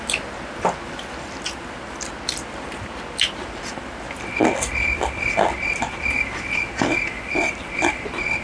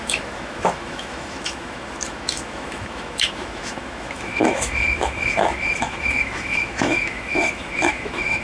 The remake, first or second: second